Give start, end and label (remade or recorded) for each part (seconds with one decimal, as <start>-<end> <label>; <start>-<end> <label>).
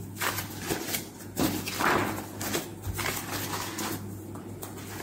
0.0-5.0 recorded